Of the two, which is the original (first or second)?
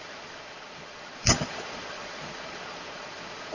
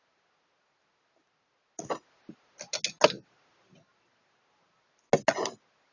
second